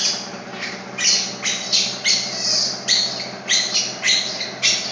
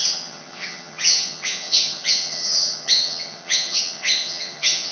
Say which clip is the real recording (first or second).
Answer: first